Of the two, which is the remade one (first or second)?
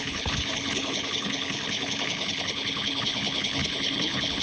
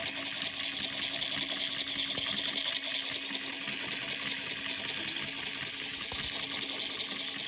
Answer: first